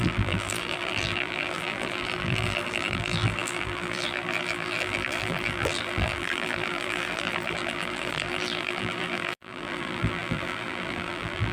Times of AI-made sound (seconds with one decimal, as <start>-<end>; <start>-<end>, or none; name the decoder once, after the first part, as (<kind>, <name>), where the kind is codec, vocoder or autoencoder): 0.0-11.5 (vocoder, BigVGAN v2)